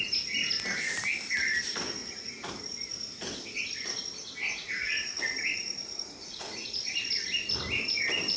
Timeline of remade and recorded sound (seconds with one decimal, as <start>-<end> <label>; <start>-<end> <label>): 0.0-2.0 recorded; 2.0-2.5 remade; 2.5-4.6 recorded; 4.6-7.1 remade; 7.1-8.4 recorded